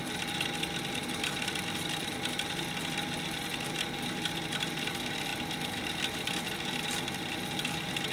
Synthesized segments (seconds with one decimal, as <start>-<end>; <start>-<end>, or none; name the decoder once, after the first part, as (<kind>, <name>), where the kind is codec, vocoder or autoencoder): none